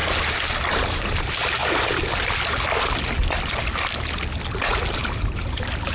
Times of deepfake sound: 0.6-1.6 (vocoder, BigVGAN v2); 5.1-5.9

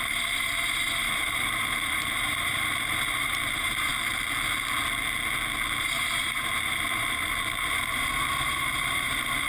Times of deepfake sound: 0.0-3.9 (vocoder, BigVGAN v2); 5.8-9.5

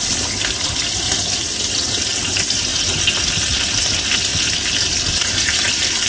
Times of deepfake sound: 0.0-2.7 (vocoder, BigVGAN v2); 3.9-4.3; 5.1-6.1

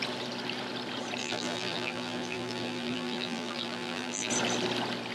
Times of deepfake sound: 1.2-4.3 (vocoder, BigVGAN v2)

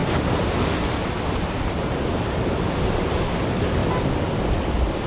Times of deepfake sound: 3.0-3.8 (vocoder, BigVGAN v2)

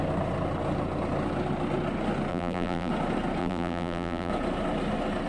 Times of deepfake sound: 2.3-2.9 (vocoder, BigVGAN v2); 3.4-4.3

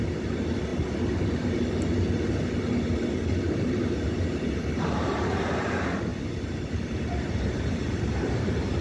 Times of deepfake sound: 0.0-0.7 (vocoder, BigVGAN v2); 3.4-6.1; 6.7-8.8

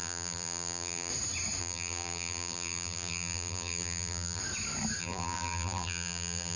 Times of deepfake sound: 0.0-1.1 (vocoder, BigVGAN v2); 1.6-4.4; 5.0-6.6